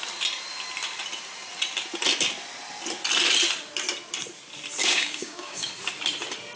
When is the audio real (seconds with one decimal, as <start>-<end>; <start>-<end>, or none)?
0.0-4.8; 5.7-6.6